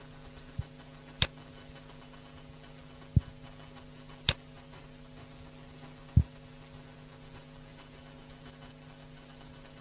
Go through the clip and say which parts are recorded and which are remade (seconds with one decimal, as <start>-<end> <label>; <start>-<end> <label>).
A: 0.0-9.8 recorded